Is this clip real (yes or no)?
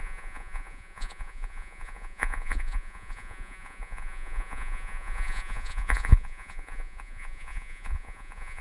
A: no